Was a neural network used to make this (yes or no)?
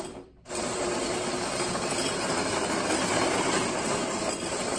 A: no